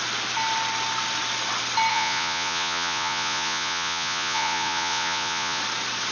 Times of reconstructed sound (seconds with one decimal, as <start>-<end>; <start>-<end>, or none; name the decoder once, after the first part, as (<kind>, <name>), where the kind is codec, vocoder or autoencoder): 1.9-5.6 (vocoder, Vocos)